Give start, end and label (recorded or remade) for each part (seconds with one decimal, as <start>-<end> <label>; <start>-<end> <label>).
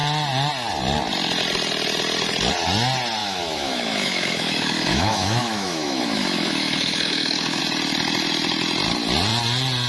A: 0.0-3.2 recorded; 3.2-7.6 remade; 7.6-9.9 recorded